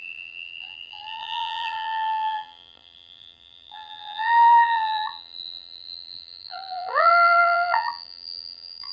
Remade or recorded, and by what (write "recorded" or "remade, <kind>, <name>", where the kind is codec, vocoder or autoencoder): remade, vocoder, BigVGAN v2